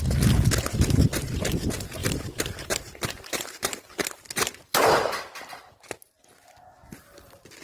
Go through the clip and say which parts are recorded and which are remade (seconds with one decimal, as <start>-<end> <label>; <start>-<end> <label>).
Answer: 0.0-2.0 recorded; 2.0-5.3 remade; 5.3-7.6 recorded